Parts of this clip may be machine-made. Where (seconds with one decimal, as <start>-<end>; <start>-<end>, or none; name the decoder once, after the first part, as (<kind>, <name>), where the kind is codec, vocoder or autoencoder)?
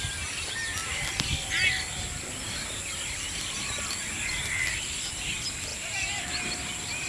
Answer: 5.7-6.3 (vocoder, BigVGAN v2)